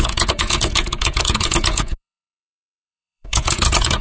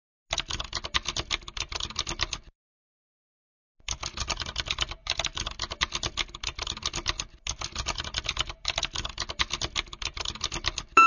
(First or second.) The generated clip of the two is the first